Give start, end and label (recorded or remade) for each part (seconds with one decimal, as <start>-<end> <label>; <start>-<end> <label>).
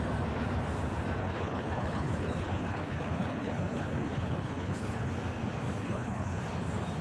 0.0-1.2 recorded; 1.2-5.1 remade; 5.1-5.8 recorded; 5.8-6.4 remade; 6.4-7.0 recorded